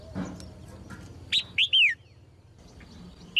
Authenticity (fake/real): real